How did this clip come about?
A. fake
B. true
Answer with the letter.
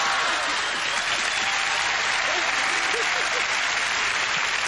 B